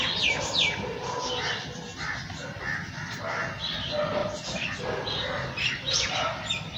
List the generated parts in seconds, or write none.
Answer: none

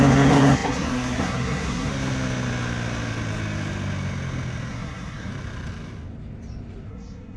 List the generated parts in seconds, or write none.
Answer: 0.0-1.9 (codec, SNAC); 4.7-5.3; 6.9-7.4

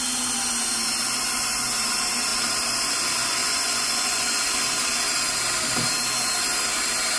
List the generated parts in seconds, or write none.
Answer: 3.4-4.4 (vocoder, Vocos)

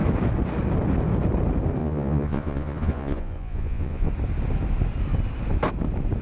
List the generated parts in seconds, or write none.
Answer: 1.8-4.1 (vocoder, Vocos)